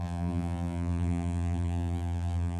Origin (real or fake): fake